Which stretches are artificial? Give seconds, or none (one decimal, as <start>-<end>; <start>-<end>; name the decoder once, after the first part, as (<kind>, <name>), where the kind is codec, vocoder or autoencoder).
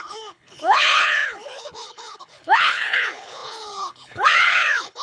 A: 0.0-5.0 (codec, HILCodec)